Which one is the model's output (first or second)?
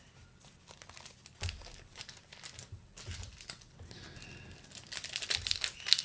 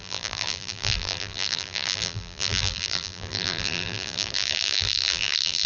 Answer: second